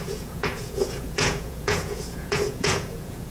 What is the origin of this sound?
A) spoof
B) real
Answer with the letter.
A